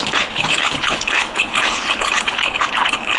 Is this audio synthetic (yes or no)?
yes